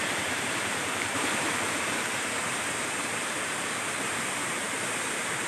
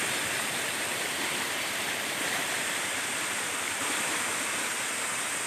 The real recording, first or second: second